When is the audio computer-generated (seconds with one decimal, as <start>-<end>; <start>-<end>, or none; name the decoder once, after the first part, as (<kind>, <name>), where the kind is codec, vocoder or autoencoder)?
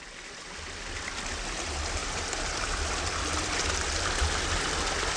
none